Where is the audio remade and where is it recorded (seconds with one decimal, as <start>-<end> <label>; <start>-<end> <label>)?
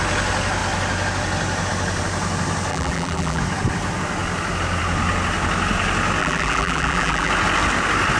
0.0-2.7 recorded; 2.7-3.4 remade; 3.4-6.2 recorded; 6.2-7.3 remade; 7.3-8.2 recorded